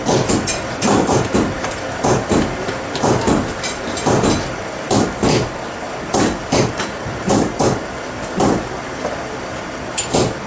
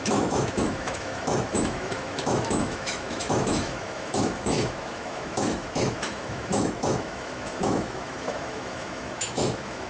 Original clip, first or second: first